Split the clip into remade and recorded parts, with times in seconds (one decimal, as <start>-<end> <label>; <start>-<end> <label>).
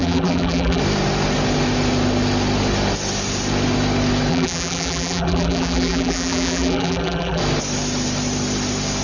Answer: 0.0-0.8 remade; 0.8-4.3 recorded; 4.3-7.4 remade; 7.4-9.0 recorded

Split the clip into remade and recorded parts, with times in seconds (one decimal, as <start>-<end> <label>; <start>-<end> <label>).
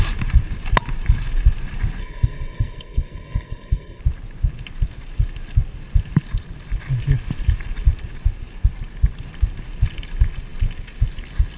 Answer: 0.0-2.0 recorded; 2.0-4.0 remade; 4.0-11.6 recorded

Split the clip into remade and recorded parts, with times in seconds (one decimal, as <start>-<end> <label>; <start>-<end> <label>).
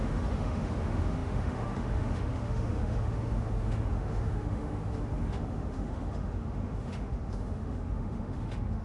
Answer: 0.0-8.8 remade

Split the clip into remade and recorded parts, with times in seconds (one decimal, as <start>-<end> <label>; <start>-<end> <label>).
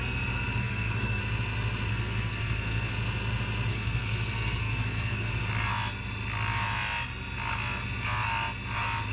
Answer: 0.0-0.6 recorded; 0.6-1.2 remade; 1.2-1.9 recorded; 1.9-2.9 remade; 2.9-3.7 recorded; 3.7-5.3 remade; 5.3-9.1 recorded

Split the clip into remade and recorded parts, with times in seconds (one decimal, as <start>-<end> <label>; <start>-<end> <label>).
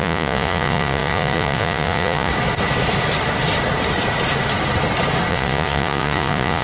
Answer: 0.0-2.3 remade; 2.3-5.3 recorded; 5.3-6.6 remade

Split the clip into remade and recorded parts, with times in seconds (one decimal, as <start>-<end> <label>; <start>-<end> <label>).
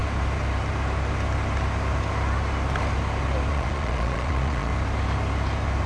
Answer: 0.0-3.5 recorded; 3.5-4.7 remade; 4.7-5.9 recorded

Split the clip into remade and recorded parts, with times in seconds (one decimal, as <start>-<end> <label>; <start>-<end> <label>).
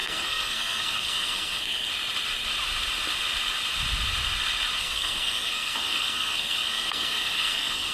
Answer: 0.0-1.9 remade; 1.9-4.8 recorded; 4.8-7.9 remade